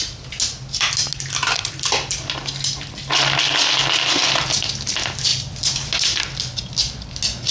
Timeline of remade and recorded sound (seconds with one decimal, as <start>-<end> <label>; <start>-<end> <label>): 0.0-7.5 recorded